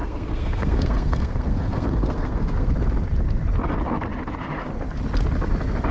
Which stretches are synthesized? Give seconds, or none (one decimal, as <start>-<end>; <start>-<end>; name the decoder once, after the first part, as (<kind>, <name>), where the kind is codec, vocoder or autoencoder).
0.0-2.7 (codec, SNAC)